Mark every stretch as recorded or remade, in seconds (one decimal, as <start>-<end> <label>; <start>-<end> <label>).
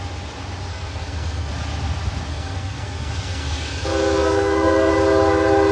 0.0-0.7 recorded; 0.7-1.5 remade; 1.5-2.3 recorded; 2.3-4.9 remade; 4.9-5.7 recorded